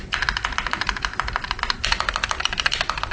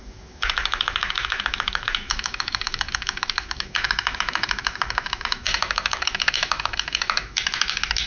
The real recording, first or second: first